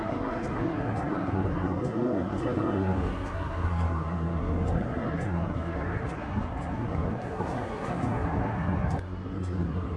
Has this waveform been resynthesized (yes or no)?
yes